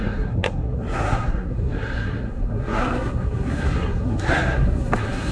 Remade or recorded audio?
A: remade